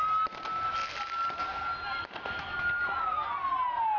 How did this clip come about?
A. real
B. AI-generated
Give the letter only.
A